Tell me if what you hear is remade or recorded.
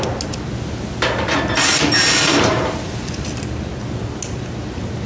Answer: recorded